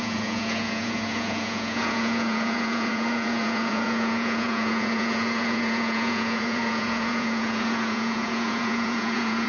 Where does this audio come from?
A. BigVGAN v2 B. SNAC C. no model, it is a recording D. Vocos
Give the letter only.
D